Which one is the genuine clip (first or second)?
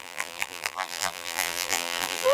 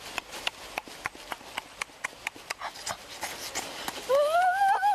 second